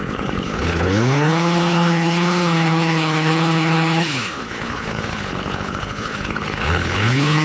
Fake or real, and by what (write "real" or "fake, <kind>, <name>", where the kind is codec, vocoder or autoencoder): fake, codec, HILCodec